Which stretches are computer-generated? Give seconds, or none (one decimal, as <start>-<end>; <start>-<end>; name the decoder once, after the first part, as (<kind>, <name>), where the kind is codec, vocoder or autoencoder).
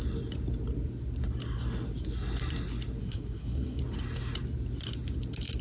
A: 3.0-3.8 (codec, SNAC)